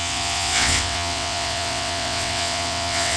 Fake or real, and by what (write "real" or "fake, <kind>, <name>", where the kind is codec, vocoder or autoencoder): fake, vocoder, WaveNeXt